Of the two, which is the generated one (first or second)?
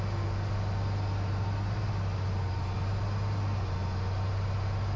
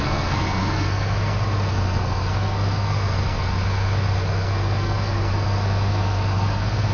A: second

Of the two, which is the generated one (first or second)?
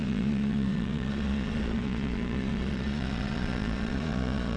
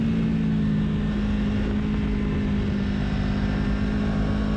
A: first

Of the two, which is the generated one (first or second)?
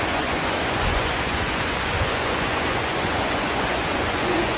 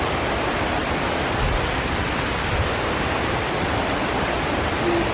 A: first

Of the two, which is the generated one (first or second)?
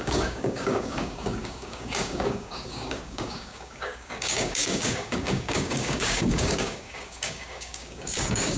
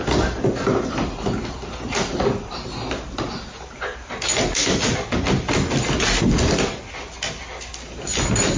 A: first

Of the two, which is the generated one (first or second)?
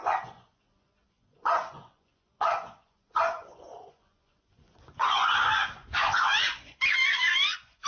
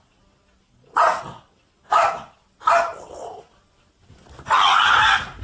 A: first